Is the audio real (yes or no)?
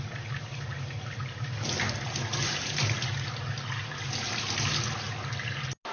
yes